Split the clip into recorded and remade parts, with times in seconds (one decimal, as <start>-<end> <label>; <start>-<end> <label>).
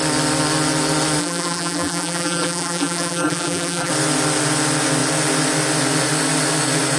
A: 0.0-1.2 recorded; 1.2-3.9 remade; 3.9-7.0 recorded